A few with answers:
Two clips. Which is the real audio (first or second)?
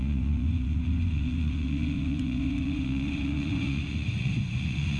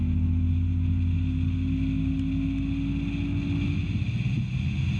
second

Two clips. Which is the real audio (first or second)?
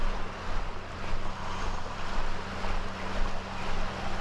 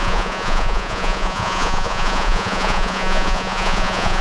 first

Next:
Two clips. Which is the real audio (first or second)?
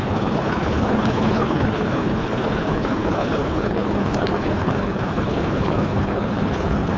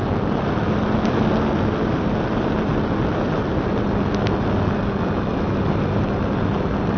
second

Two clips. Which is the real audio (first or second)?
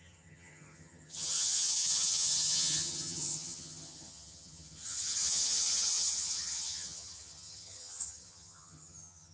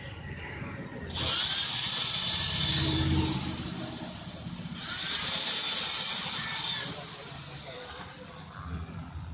second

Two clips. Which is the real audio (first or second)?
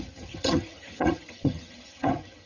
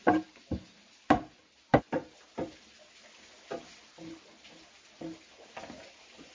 second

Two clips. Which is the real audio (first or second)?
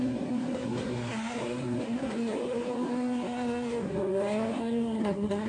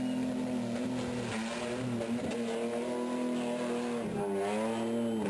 second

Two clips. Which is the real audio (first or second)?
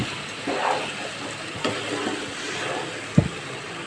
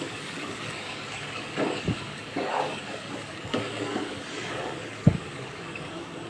first